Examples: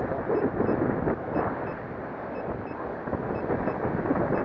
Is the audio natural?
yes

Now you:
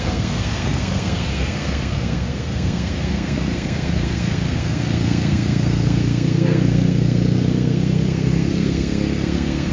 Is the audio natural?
no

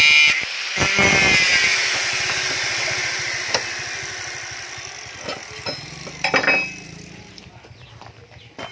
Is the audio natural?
yes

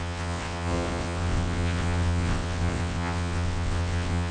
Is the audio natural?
no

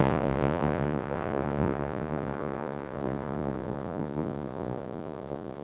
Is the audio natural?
no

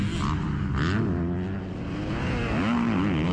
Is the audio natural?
yes